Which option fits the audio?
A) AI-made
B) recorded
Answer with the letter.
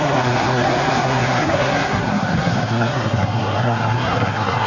A